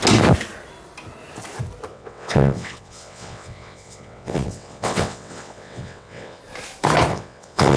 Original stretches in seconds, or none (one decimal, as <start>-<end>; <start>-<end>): 0.0-1.9; 6.4-7.1